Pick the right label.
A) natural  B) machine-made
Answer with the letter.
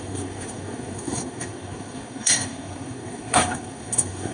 B